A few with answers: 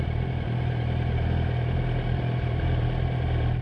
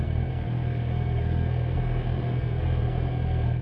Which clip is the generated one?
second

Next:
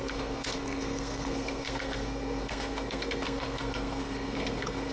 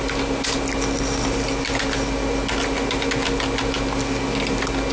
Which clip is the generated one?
first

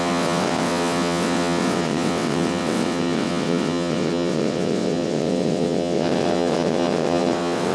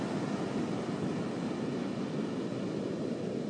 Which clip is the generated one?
first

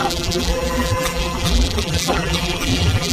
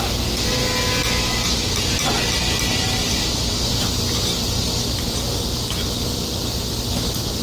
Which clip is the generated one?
first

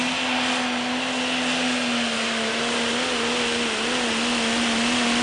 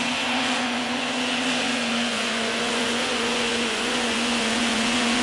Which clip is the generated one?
second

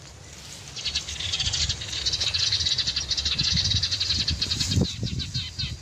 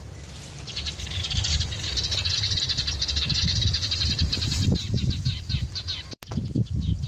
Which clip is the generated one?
second